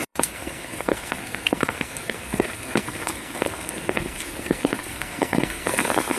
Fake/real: fake